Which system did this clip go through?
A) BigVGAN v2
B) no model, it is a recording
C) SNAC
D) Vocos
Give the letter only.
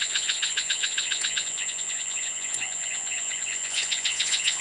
D